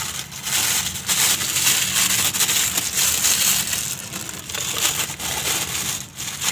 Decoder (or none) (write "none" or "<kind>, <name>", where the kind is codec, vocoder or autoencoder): none